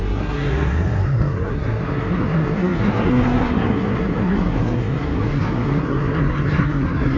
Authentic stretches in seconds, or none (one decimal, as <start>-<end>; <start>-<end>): none